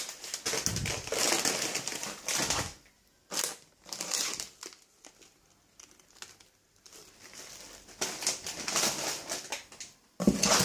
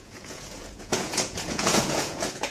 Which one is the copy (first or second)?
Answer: second